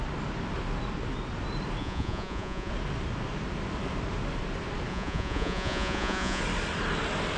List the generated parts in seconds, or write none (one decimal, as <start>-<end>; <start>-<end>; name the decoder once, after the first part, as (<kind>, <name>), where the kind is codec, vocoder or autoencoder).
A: 1.8-2.7 (vocoder, Vocos); 4.9-6.4